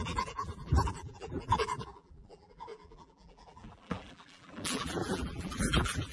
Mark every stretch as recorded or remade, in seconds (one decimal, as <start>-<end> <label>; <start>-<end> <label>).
0.0-6.1 remade